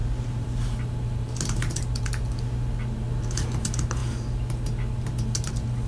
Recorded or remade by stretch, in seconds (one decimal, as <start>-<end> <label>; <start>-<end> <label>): 0.0-5.9 recorded